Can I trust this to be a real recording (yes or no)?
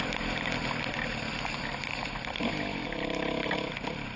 yes